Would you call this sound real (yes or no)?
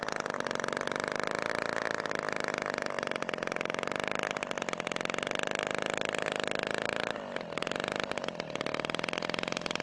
yes